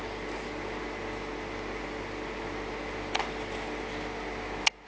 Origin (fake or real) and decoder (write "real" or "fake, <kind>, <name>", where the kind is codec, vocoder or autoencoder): real